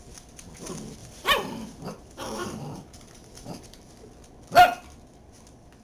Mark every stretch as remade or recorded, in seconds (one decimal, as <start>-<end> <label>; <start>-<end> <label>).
0.0-1.0 recorded; 1.0-3.9 remade; 3.9-5.8 recorded